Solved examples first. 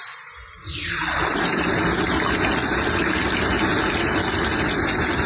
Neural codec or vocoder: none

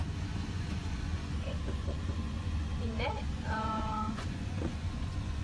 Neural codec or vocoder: vocoder, Vocos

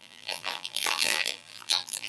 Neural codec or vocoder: vocoder, BigVGAN v2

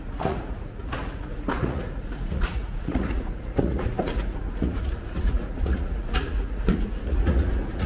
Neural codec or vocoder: vocoder, Vocos